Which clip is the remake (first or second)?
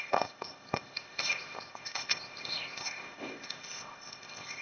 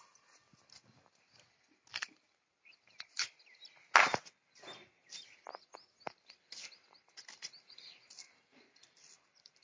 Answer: first